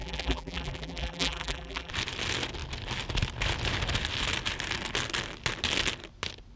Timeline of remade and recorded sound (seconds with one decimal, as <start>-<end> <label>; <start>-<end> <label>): 0.0-1.9 remade; 1.9-6.6 recorded